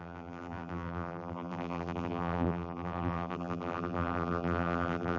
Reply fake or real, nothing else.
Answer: fake